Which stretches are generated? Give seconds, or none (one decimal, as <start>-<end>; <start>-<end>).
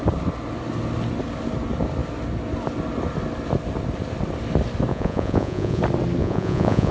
4.9-5.8; 6.2-6.9